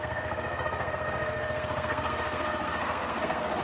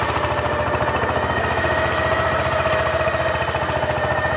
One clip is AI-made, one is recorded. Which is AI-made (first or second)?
first